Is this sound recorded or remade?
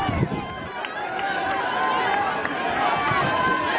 recorded